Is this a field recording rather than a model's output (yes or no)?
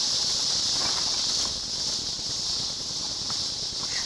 yes